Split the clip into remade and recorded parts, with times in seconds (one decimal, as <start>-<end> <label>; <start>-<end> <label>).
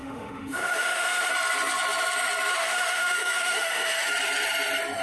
0.0-1.3 remade; 1.3-2.5 recorded; 2.5-4.1 remade; 4.1-5.0 recorded